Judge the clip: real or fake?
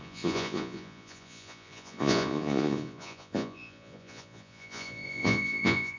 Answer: fake